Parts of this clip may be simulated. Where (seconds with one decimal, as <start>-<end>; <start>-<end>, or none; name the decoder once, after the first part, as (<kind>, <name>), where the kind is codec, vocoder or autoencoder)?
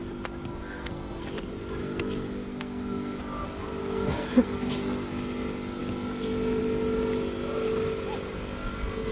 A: 0.5-1.3 (codec, SNAC); 1.8-3.2; 3.8-5.1